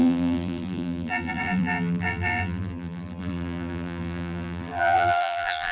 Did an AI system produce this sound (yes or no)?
yes